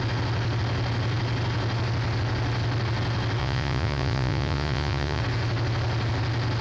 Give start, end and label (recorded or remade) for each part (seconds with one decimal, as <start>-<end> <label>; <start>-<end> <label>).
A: 0.0-3.4 recorded; 3.4-5.2 remade; 5.2-6.6 recorded